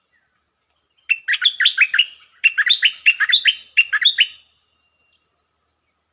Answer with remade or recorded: recorded